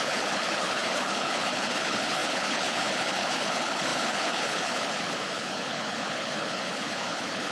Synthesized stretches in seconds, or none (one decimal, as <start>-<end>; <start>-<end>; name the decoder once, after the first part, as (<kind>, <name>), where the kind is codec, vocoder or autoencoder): 0.0-7.5 (codec, HILCodec)